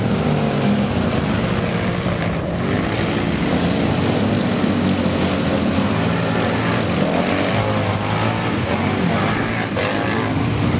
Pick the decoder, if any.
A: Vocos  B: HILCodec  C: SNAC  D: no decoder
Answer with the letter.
D